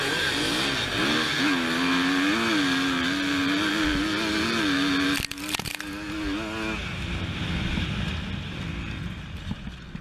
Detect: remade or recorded recorded